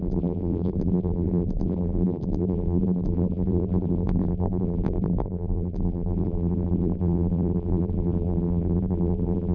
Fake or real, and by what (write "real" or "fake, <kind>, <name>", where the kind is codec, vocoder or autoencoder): fake, vocoder, BigVGAN v2